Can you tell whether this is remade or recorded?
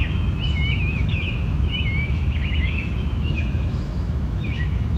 remade